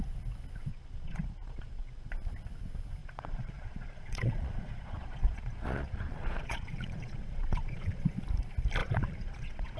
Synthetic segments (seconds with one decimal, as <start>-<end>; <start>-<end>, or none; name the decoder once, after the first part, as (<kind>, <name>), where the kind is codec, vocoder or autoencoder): 0.7-2.1 (vocoder, Vocos); 3.0-8.0; 8.8-9.8